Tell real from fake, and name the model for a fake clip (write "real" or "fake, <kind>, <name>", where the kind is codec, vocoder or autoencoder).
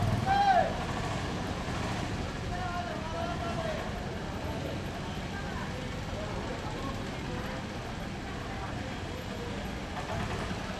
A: real